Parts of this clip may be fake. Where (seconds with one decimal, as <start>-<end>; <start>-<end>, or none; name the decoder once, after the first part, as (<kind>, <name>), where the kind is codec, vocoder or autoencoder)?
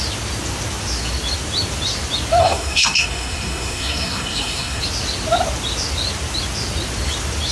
2.4-4.8 (codec, SNAC)